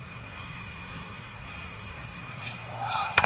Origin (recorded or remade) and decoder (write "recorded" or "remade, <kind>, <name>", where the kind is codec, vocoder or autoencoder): remade, codec, SNAC